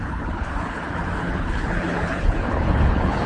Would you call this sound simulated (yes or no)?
yes